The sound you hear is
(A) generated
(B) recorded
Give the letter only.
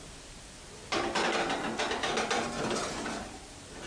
B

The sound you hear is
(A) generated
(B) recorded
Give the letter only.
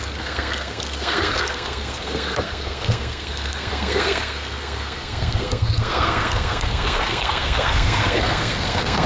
A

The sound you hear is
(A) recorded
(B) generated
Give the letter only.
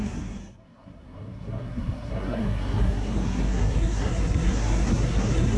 B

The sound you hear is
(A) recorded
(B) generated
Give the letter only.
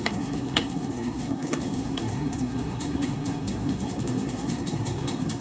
B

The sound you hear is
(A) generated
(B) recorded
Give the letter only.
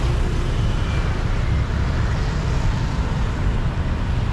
B